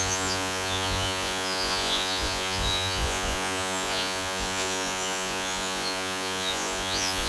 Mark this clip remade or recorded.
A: remade